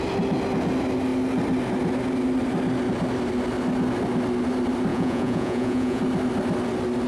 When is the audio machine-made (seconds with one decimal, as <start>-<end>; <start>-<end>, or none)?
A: 4.9-6.0